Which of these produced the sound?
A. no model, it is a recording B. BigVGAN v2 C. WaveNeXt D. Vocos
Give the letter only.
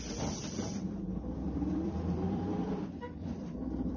B